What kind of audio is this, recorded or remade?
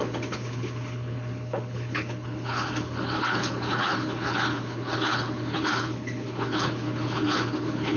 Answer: remade